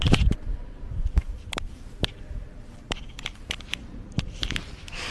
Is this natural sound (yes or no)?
no